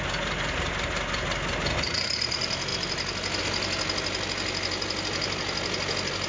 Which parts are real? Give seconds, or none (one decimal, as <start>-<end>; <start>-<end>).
0.0-6.3